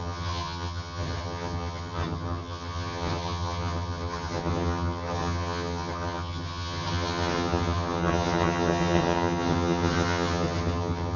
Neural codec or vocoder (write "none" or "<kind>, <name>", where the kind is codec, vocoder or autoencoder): vocoder, HiFi-GAN